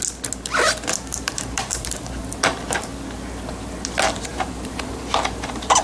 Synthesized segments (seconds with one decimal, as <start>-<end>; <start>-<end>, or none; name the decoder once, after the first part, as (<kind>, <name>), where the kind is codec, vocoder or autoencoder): 1.1-2.2 (vocoder, BigVGAN v2); 4.3-5.8